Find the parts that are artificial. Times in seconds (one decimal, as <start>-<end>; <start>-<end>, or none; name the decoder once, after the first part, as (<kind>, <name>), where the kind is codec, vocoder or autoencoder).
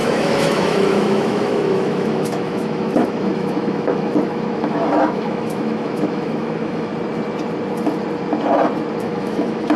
0.0-6.9 (autoencoder, DAC-VAE); 9.0-9.8